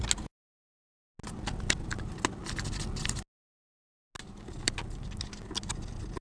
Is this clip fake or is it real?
real